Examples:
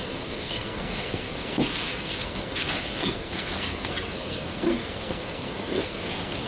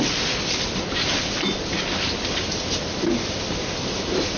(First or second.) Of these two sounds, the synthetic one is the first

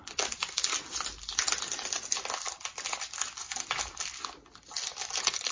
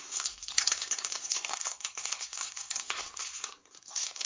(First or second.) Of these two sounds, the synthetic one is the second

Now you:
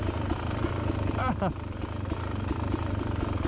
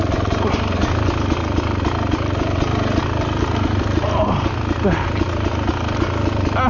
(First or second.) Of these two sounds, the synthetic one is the first